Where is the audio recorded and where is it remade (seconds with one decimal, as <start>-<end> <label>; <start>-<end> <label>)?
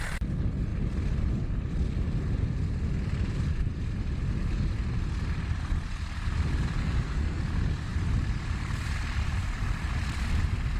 0.0-6.8 recorded; 6.8-7.4 remade; 7.4-10.8 recorded